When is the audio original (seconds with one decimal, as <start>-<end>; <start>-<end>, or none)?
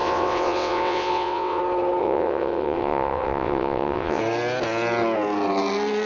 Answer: 1.6-2.0; 4.2-6.1